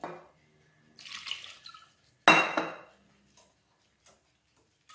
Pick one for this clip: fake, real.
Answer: real